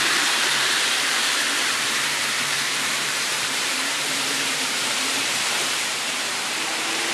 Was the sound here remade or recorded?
remade